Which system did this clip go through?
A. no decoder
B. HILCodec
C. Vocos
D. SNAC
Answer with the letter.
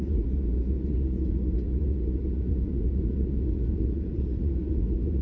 C